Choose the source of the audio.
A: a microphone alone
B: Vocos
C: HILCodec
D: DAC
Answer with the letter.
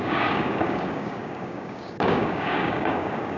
D